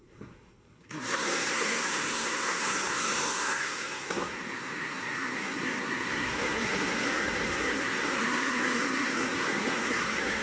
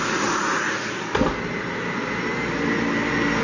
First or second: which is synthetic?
first